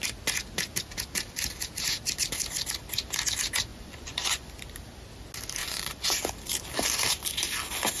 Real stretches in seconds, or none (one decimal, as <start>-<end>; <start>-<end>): 0.0-3.7; 4.5-5.6; 6.2-8.0

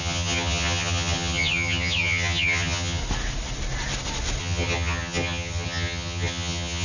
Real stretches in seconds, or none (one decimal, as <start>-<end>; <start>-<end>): 3.0-4.4

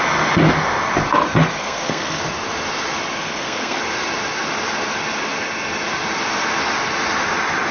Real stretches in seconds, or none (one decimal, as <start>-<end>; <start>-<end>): 0.0-1.5; 2.2-3.2; 3.8-7.7

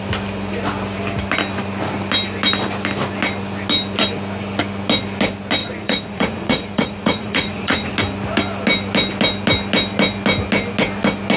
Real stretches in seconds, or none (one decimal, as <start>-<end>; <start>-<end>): 0.0-5.6; 7.9-11.4

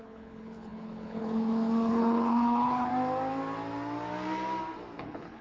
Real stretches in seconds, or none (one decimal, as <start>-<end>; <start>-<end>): 2.9-5.0

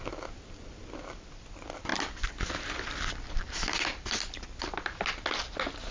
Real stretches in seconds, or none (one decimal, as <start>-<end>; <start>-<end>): 0.0-5.9

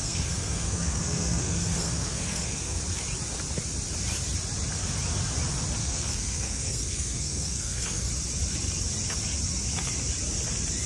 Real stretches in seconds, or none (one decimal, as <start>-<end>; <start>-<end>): 2.8-5.8; 8.1-10.9

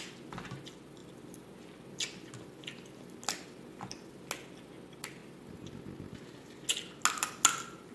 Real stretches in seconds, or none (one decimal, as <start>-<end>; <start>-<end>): 0.0-7.9